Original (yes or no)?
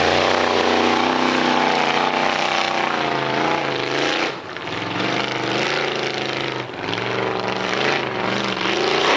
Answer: yes